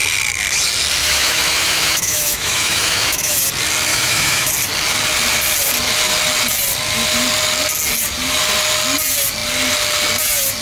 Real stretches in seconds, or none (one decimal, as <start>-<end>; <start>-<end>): 0.0-1.0; 3.4-3.9; 4.5-10.6